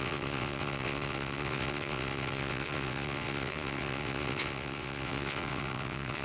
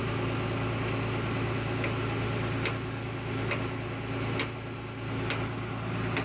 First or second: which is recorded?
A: second